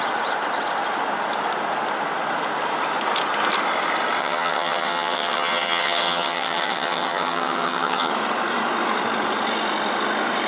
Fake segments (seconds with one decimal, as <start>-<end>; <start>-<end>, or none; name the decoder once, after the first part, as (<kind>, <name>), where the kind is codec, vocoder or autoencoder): 4.2-8.1 (vocoder, HiFi-GAN)